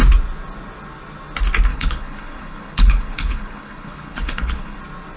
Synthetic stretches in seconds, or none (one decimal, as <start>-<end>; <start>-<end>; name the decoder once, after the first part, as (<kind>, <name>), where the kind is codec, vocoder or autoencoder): 1.7-4.8 (codec, HILCodec)